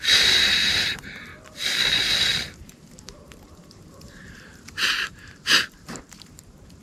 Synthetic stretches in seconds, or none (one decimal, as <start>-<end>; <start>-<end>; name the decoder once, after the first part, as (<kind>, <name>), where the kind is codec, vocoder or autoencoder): 0.0-1.3 (vocoder, BigVGAN v2); 2.6-6.8